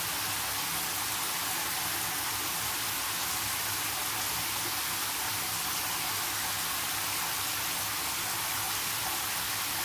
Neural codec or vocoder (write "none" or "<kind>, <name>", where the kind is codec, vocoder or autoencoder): none